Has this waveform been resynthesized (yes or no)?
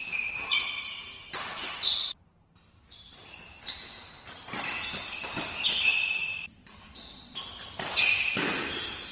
yes